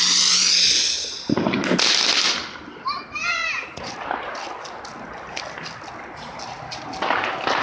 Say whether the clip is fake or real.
real